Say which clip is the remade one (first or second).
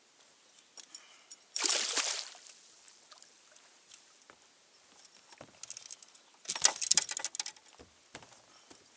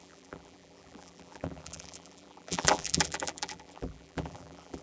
second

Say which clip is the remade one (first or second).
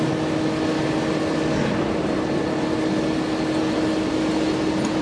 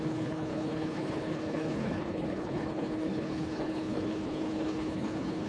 second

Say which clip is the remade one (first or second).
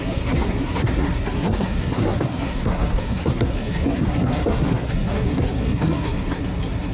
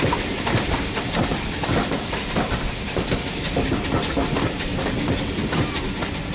first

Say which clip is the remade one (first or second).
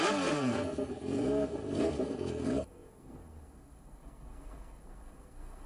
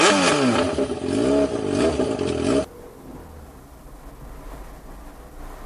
first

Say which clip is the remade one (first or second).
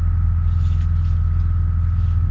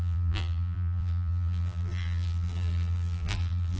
second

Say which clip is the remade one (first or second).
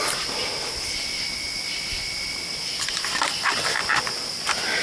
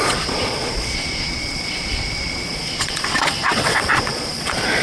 second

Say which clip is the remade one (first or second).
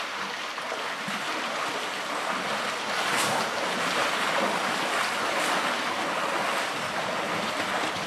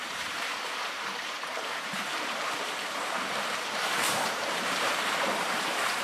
second